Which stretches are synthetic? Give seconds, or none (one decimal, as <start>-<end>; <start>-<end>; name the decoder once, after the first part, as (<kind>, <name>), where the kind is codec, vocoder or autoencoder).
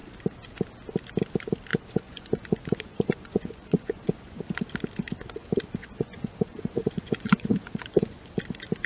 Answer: 1.7-4.4 (vocoder, Vocos); 5.8-8.2